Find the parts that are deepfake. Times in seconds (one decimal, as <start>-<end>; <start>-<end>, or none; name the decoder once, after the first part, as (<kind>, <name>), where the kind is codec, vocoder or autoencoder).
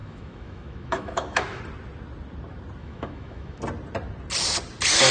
0.0-1.6 (autoencoder, DAC-VAE); 2.8-3.6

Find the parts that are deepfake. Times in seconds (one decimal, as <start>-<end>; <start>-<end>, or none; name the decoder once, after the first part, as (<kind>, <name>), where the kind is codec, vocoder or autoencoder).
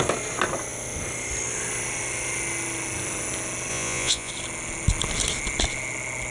3.7-4.3 (vocoder, Vocos)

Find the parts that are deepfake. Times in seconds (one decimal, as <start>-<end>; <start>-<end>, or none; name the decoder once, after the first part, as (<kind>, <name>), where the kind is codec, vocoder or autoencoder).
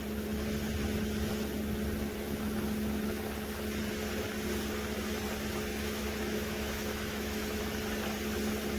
5.7-7.6 (autoencoder, DAC-VAE)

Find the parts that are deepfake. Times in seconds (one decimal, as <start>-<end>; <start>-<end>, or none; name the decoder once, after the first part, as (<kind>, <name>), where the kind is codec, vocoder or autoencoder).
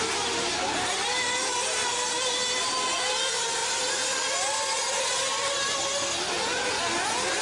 none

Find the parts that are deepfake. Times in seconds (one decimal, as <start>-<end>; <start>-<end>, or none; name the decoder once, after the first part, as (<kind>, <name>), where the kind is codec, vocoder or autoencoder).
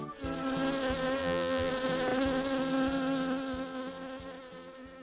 1.2-1.7 (vocoder, BigVGAN v2)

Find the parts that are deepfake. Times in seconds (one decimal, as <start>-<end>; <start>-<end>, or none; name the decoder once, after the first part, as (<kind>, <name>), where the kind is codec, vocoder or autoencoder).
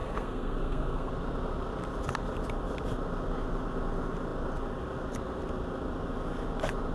0.0-1.1 (codec, SNAC)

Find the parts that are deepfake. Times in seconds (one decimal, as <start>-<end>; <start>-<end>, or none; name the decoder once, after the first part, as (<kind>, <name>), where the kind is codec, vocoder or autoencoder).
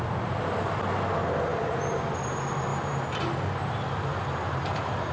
1.5-2.0 (vocoder, BigVGAN v2); 2.7-3.3; 4.1-5.1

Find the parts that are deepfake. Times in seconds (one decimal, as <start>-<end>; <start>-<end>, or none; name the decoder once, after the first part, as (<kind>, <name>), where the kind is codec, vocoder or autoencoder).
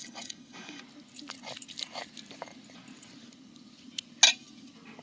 0.0-0.8 (codec, DAC)